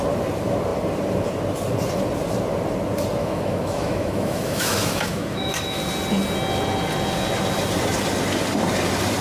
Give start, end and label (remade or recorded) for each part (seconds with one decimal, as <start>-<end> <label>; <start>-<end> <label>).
0.0-3.2 recorded; 3.2-5.8 remade; 5.8-9.2 recorded